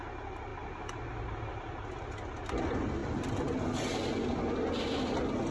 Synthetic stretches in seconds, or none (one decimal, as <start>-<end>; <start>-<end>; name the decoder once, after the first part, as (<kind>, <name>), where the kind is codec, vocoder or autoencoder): none